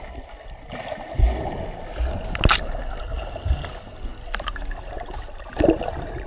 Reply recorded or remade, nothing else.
recorded